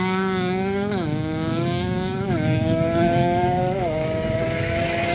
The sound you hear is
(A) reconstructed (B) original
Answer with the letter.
A